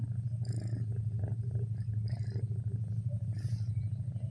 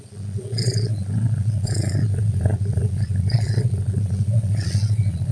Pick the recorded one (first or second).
first